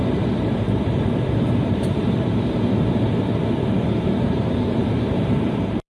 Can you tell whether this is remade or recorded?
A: remade